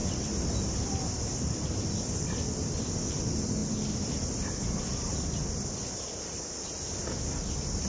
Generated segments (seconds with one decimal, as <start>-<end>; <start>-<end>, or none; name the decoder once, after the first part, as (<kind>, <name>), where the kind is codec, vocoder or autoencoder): none